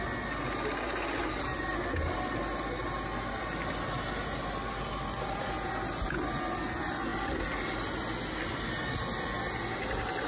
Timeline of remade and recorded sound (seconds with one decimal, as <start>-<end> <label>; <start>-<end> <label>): 0.0-10.3 recorded